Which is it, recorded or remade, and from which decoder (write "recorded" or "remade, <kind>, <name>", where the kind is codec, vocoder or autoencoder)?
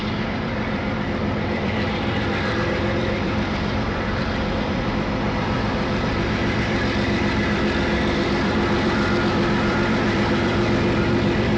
remade, vocoder, BigVGAN v2